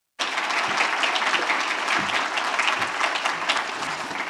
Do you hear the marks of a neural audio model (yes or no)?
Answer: no